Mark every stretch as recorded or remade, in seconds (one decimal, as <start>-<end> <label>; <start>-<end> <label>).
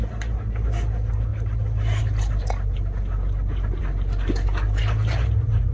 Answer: 0.0-5.7 recorded